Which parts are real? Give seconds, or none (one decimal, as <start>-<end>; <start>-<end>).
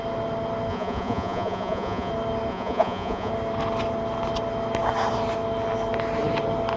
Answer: 0.0-0.7; 2.1-2.5; 3.3-6.8